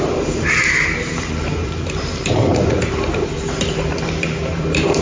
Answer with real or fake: fake